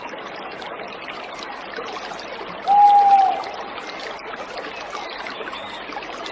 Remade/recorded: recorded